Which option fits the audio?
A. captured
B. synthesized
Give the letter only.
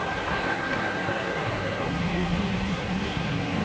B